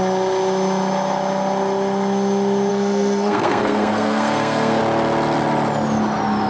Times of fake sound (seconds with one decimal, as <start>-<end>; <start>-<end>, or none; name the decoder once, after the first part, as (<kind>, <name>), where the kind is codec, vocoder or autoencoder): 2.7-4.8 (codec, SNAC)